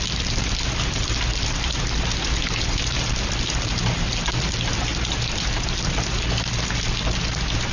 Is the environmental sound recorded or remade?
recorded